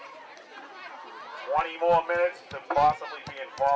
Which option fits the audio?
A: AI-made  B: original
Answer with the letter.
B